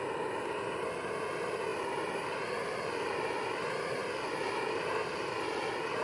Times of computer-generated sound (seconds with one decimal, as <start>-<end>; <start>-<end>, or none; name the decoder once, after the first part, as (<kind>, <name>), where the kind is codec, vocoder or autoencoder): none